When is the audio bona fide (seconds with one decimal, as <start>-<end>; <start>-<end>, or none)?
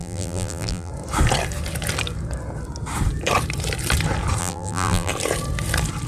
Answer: 0.9-4.4; 5.1-6.1